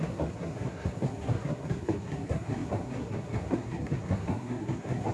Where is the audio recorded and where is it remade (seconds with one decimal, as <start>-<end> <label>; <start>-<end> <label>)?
0.0-5.1 remade